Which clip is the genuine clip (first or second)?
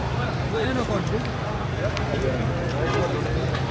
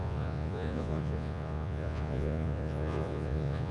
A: first